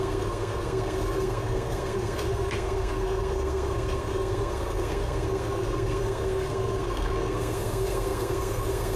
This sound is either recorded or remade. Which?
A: remade